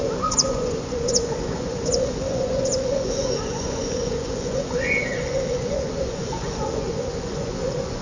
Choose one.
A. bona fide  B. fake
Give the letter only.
B